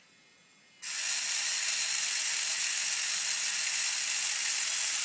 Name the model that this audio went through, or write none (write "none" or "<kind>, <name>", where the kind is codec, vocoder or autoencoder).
none